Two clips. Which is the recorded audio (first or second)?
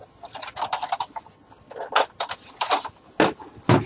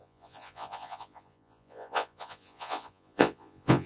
first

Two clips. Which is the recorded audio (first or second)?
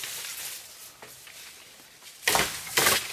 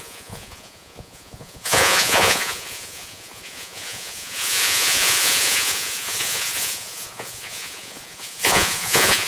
first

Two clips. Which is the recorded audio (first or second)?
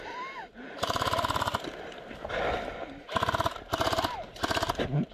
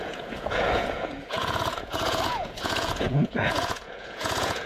first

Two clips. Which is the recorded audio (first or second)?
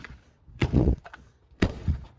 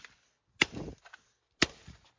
second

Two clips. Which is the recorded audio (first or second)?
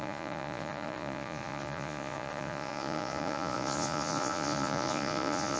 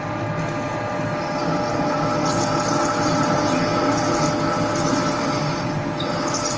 second